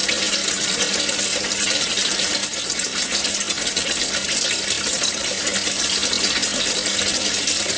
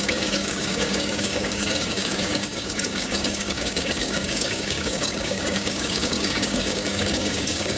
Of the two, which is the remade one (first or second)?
second